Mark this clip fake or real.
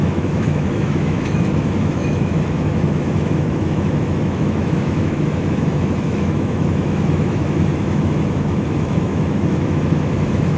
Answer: fake